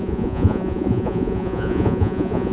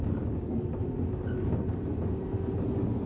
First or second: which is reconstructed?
first